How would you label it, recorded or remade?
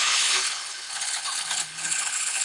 remade